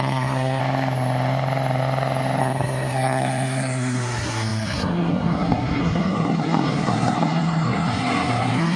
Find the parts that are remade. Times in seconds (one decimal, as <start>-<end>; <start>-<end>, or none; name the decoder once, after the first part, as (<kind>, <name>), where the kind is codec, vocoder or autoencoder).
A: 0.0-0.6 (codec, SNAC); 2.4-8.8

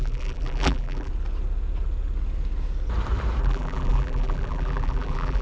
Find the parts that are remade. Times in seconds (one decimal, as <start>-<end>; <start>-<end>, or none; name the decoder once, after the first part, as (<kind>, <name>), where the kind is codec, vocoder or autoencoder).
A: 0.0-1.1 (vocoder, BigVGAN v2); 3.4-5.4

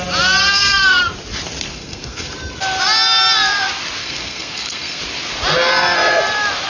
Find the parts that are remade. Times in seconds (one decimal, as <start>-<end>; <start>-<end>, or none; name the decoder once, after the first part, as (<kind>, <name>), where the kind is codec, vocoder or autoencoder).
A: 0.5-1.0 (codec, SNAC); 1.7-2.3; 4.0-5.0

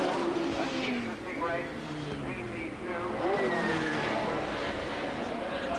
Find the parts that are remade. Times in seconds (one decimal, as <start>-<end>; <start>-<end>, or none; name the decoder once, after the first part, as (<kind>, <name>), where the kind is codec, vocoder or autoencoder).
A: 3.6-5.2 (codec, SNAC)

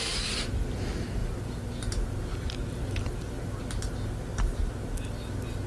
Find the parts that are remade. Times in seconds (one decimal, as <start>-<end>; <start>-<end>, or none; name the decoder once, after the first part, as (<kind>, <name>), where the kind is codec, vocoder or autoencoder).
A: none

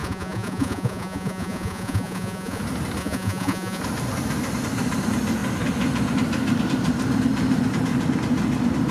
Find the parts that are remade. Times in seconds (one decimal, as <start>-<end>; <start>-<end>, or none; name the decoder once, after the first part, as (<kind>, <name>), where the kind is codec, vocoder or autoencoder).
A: 0.0-2.6 (vocoder, Vocos); 3.0-3.8

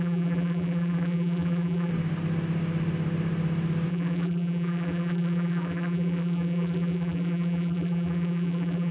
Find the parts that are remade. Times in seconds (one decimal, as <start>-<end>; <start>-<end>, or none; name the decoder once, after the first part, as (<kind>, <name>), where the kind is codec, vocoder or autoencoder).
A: 0.0-1.9 (vocoder, BigVGAN v2); 3.9-8.9

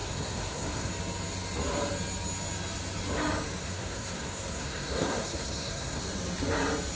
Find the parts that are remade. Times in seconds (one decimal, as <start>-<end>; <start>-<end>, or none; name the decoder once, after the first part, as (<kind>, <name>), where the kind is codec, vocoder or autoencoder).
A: 0.0-0.9 (codec, SNAC); 3.6-6.0